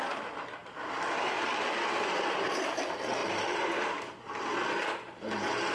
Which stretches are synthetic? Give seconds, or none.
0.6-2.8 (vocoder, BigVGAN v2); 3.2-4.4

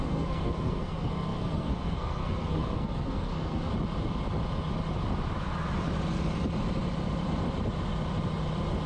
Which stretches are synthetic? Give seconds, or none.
0.0-3.7 (codec, SNAC)

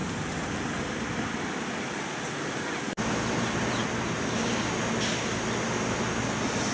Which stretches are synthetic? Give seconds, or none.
none

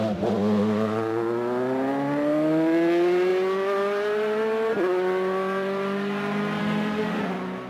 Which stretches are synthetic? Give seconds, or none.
6.6-7.2 (autoencoder, DAC-VAE)

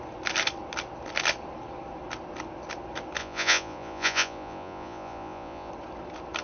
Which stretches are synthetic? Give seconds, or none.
3.2-5.7 (vocoder, Vocos)

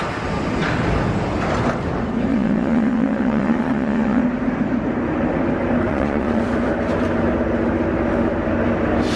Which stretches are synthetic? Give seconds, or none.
2.3-4.2 (vocoder, Vocos); 5.9-6.4

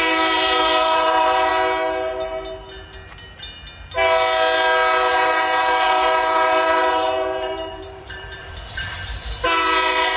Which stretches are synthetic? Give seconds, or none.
0.0-1.5 (vocoder, BigVGAN v2); 5.1-10.2